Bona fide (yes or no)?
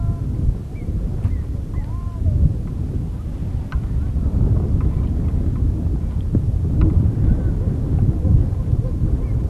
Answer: yes